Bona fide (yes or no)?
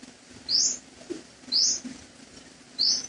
yes